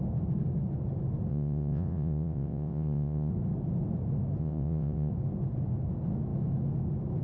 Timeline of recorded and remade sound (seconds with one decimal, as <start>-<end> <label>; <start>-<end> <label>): 0.0-1.3 recorded; 1.3-3.3 remade; 3.3-4.4 recorded; 4.4-5.1 remade; 5.1-7.2 recorded